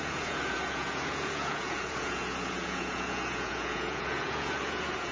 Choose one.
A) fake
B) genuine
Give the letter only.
A